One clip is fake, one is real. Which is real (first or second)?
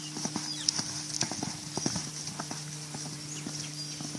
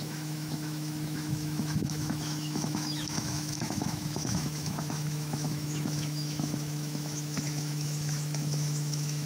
first